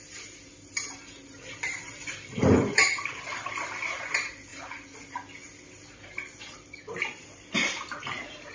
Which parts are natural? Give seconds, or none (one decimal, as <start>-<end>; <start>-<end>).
0.0-2.3; 3.8-8.5

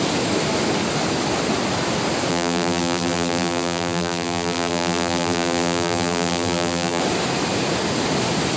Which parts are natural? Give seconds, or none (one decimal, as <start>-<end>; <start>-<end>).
0.0-2.3; 7.0-8.6

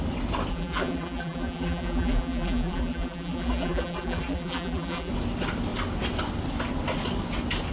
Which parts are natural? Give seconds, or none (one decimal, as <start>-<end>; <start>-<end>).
0.0-0.5; 5.1-7.7